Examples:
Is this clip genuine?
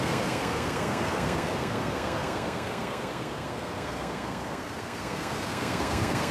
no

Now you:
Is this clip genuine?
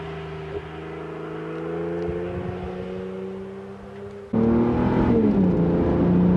yes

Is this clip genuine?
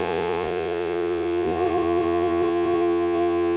no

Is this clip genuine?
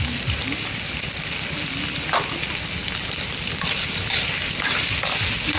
yes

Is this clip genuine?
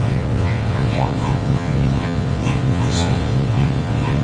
no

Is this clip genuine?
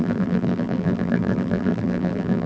no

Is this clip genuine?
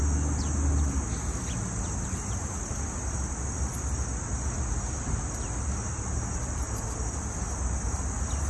yes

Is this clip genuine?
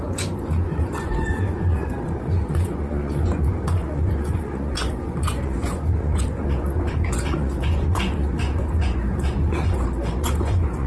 no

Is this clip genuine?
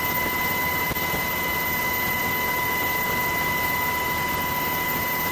yes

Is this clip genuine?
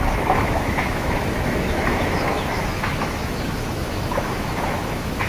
no